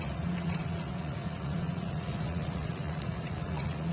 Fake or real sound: fake